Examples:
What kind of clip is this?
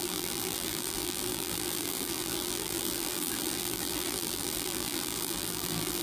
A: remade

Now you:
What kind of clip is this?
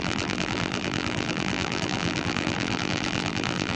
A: remade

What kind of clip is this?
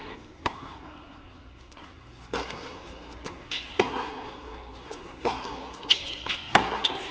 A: remade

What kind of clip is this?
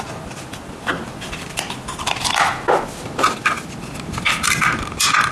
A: recorded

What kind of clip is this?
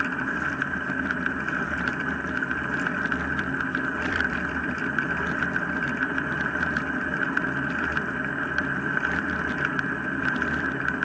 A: remade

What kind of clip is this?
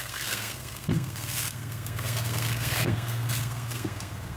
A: remade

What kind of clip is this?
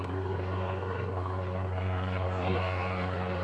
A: remade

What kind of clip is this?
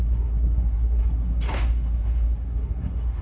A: remade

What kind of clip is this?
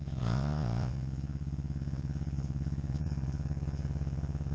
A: remade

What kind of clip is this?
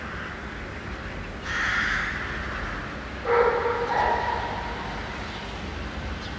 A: recorded